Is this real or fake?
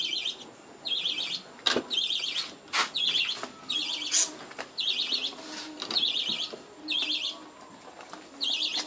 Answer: real